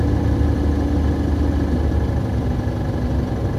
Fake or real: real